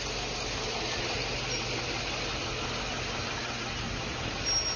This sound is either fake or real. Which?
real